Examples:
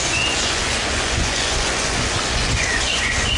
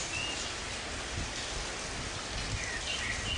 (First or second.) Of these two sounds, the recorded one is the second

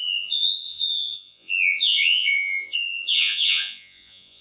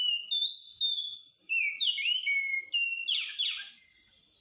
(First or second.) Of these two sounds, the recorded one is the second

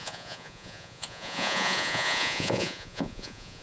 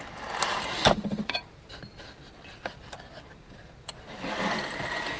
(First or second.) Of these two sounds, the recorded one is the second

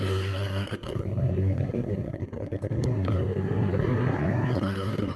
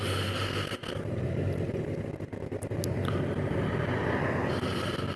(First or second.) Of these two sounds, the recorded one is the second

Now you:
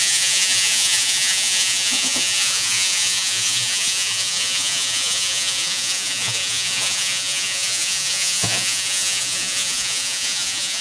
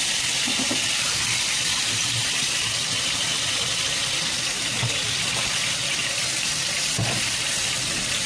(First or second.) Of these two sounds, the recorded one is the second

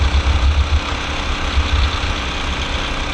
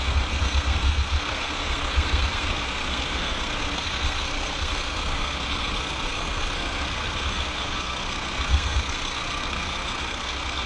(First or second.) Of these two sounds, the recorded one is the first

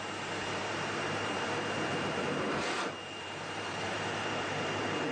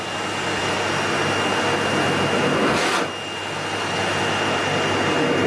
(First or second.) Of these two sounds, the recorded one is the second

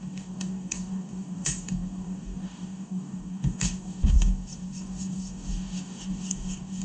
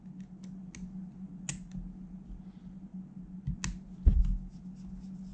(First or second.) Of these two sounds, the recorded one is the second